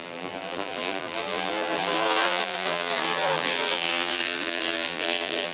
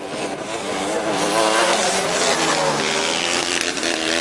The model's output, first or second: first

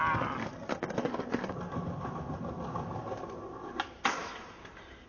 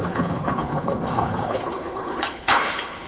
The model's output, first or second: second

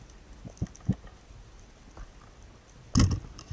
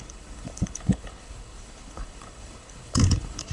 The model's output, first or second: second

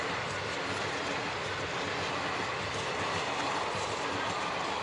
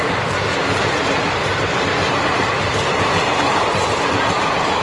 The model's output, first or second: second